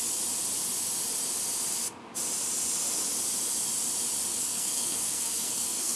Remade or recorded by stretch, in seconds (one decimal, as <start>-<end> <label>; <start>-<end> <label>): 0.0-4.3 recorded; 4.3-6.0 remade